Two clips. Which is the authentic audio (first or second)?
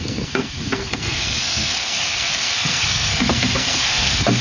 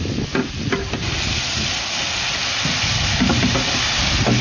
second